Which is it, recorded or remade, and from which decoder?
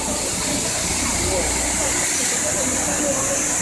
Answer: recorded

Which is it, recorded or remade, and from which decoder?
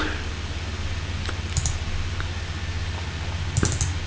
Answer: recorded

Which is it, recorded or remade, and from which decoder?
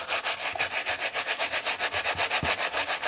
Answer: recorded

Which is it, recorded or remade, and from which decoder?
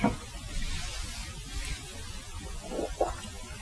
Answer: recorded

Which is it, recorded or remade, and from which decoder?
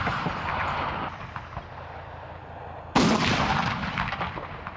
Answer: recorded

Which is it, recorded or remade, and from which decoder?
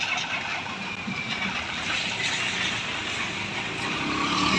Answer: recorded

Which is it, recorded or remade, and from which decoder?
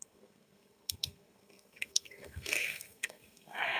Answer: remade, codec, SNAC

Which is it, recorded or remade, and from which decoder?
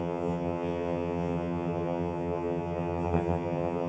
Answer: remade, vocoder, HiFi-GAN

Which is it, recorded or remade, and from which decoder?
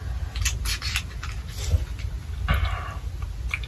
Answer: recorded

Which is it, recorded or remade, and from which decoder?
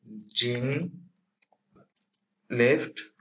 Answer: recorded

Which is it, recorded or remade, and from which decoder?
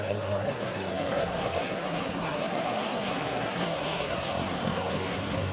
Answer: remade, codec, SNAC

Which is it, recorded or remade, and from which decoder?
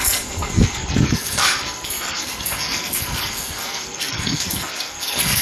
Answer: remade, codec, SNAC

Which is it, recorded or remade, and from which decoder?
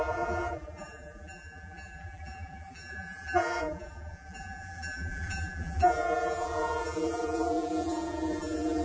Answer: remade, vocoder, BigVGAN v2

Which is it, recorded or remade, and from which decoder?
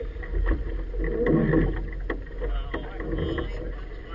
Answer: recorded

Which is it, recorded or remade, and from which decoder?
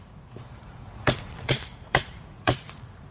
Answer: remade, vocoder, Vocos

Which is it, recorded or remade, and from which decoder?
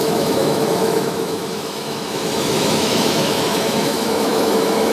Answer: remade, autoencoder, DAC-VAE